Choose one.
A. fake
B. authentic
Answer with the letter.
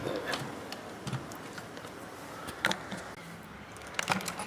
B